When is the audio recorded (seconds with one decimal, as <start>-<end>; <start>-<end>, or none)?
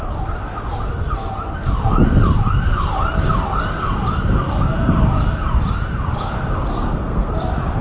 0.0-6.7; 7.3-7.8